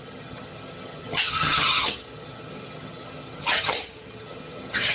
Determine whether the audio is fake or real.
fake